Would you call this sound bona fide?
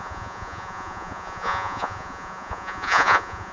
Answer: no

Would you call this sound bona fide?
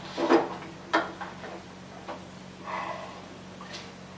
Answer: yes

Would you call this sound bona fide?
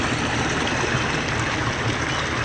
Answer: yes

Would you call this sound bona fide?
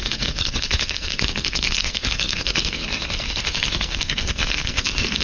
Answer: no